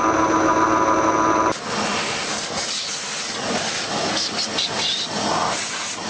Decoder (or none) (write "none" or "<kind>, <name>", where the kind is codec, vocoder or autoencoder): none